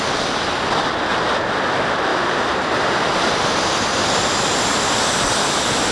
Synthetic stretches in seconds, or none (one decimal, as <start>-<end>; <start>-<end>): 2.1-2.9